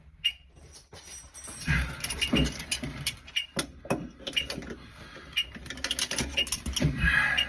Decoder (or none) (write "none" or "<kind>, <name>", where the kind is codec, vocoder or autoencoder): none